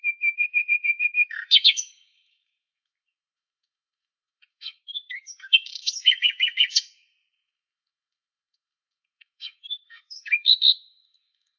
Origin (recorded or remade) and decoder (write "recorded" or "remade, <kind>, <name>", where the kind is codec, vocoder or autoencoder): remade, codec, SNAC